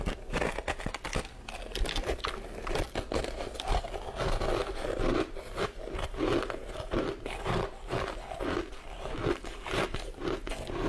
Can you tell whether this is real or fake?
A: real